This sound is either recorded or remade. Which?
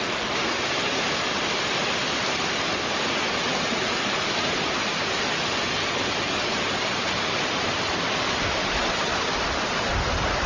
recorded